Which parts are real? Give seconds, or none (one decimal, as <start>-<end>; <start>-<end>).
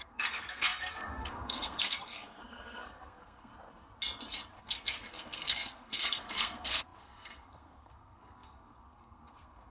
3.5-4.6